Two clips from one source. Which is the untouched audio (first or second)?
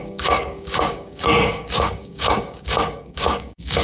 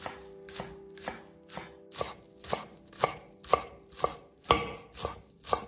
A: second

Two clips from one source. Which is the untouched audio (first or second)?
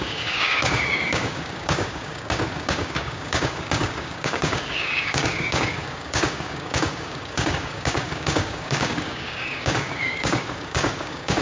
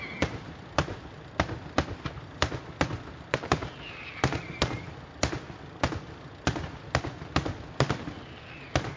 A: second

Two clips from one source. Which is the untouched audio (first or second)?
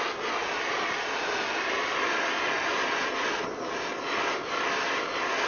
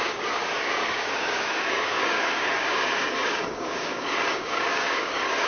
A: first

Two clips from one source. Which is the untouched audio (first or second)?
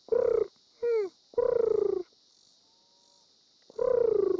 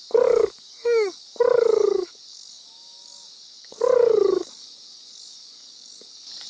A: first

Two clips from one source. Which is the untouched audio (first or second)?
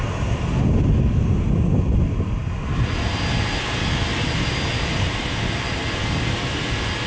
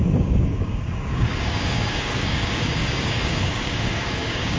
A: first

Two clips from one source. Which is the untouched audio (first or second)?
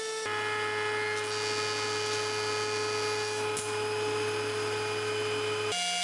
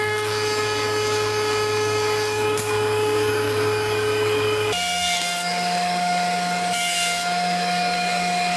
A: first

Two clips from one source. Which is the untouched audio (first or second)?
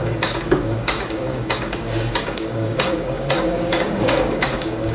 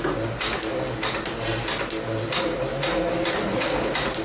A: second